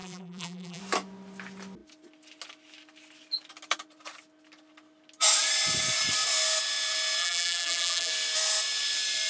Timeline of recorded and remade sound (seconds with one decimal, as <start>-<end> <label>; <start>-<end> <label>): 0.0-0.8 remade; 0.8-7.2 recorded; 7.2-8.1 remade; 8.1-9.3 recorded